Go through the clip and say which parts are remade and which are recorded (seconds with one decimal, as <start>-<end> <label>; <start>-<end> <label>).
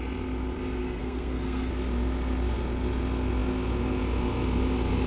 0.0-0.8 recorded; 0.8-1.7 remade; 1.7-5.1 recorded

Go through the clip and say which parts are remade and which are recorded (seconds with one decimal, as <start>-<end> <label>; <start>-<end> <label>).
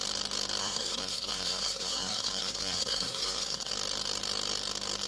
0.0-0.6 recorded; 0.6-3.7 remade; 3.7-5.1 recorded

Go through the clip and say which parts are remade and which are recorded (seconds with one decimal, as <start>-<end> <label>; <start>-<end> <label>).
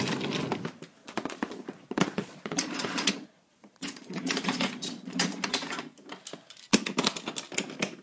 0.0-1.0 recorded; 1.0-5.8 remade; 5.8-8.0 recorded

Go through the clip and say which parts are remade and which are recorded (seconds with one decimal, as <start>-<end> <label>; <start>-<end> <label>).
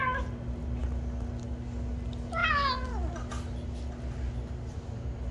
0.0-5.3 recorded